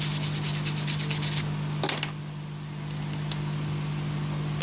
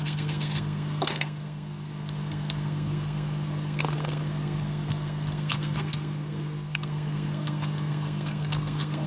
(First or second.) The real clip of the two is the first